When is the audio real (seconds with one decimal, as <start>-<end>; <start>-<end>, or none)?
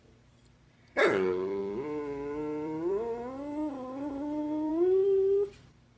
none